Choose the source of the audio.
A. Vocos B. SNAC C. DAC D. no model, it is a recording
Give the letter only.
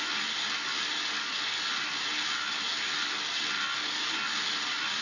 D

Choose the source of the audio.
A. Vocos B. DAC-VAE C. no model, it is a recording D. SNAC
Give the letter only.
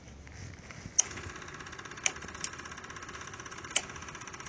C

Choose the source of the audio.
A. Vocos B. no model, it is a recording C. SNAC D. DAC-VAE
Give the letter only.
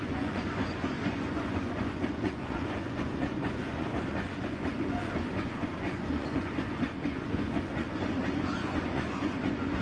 A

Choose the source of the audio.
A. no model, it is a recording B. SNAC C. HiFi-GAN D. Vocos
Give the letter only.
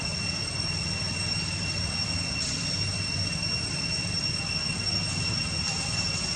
A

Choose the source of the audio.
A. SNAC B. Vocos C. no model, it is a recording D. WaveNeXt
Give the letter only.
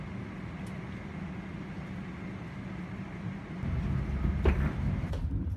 C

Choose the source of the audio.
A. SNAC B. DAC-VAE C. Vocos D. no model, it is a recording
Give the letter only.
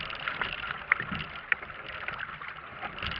D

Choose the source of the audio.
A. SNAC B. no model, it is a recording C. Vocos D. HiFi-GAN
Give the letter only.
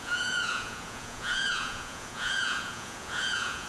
C